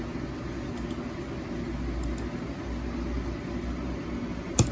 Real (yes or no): yes